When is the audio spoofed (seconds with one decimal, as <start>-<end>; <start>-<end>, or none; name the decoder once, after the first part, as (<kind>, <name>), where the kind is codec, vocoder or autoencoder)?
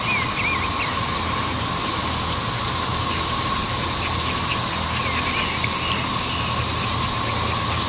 none